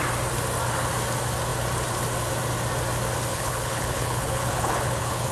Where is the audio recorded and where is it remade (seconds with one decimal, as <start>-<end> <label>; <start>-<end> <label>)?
0.0-3.3 recorded; 3.3-5.3 remade